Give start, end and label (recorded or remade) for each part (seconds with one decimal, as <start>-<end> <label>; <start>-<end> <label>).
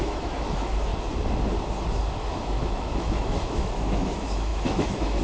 0.0-0.9 remade; 0.9-2.1 recorded; 2.1-5.2 remade